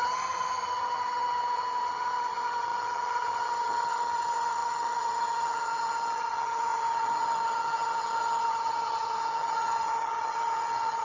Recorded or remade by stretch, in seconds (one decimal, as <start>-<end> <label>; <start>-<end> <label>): 0.0-11.0 remade